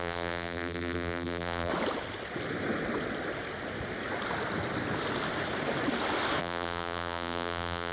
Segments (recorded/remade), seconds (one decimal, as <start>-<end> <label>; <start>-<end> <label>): 0.0-1.7 remade; 1.7-6.4 recorded; 6.4-7.9 remade